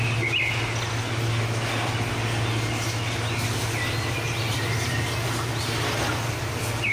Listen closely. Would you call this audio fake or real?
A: real